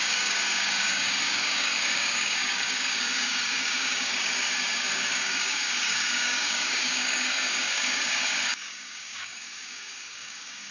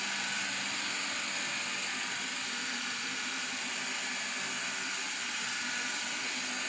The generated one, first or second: first